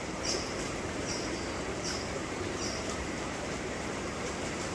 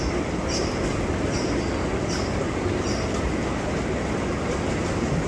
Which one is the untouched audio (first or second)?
second